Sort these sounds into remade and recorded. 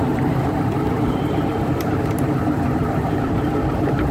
remade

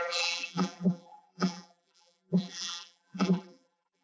remade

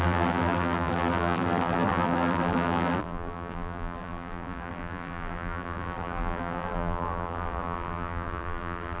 remade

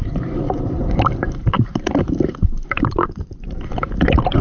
remade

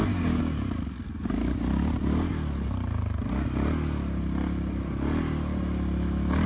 recorded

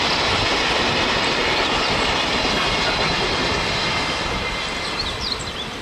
recorded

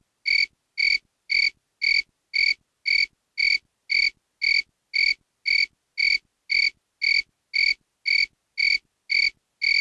recorded